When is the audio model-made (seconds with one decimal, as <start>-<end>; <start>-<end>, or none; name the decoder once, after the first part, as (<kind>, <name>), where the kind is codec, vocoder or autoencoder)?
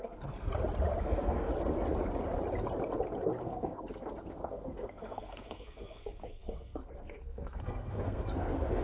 0.0-0.5 (codec, SNAC); 1.0-1.5; 3.4-8.8